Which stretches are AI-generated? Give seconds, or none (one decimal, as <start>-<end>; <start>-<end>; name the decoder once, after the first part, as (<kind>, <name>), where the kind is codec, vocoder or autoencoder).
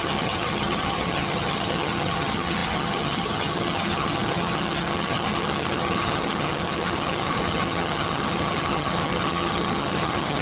0.0-10.4 (vocoder, HiFi-GAN)